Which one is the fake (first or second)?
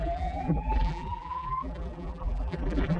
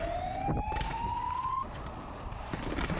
first